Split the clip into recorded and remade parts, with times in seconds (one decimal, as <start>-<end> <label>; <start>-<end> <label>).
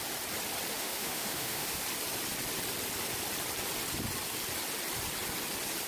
0.0-0.7 recorded; 0.7-1.8 remade; 1.8-5.9 recorded